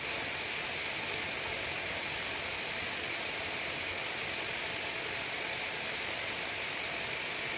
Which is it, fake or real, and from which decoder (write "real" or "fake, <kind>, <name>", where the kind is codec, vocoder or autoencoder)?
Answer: real